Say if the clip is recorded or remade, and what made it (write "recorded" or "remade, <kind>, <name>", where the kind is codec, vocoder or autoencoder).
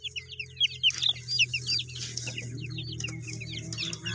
recorded